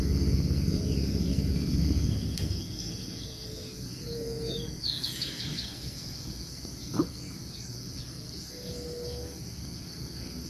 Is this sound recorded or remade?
remade